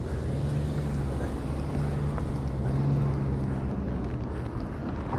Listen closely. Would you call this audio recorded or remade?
recorded